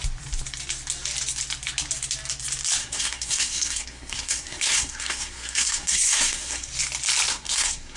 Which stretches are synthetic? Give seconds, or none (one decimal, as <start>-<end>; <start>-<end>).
2.8-6.7; 7.3-8.0